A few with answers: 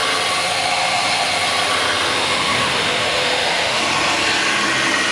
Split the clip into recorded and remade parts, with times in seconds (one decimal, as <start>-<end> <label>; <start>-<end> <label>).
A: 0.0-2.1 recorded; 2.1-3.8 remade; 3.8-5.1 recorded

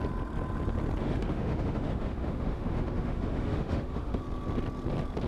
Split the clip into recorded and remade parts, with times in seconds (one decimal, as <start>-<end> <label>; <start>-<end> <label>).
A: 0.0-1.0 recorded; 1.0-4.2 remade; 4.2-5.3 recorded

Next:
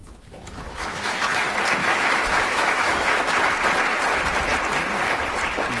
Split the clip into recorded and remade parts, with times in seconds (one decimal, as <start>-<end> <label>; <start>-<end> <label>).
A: 0.0-1.4 remade; 1.4-1.8 recorded; 1.8-3.3 remade; 3.3-5.8 recorded

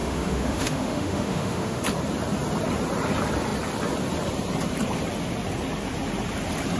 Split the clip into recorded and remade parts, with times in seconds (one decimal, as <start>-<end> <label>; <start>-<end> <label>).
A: 0.0-1.8 remade; 1.8-6.8 recorded